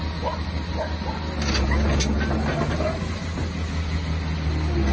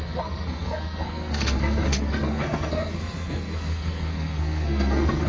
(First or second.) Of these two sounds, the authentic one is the first